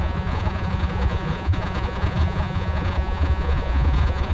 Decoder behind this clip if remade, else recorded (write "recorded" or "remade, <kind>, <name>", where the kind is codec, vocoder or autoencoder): remade, vocoder, Vocos